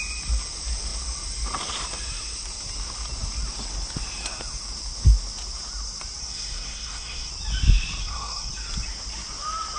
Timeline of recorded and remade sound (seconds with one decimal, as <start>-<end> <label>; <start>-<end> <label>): 0.0-6.2 recorded; 6.2-7.3 remade; 7.3-8.0 recorded; 8.0-8.5 remade; 8.5-9.8 recorded